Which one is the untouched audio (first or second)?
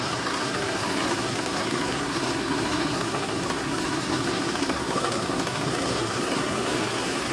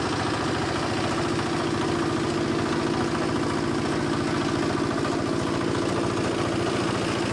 second